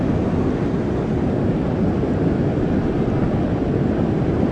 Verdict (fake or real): real